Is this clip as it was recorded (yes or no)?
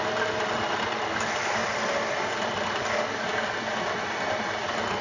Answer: yes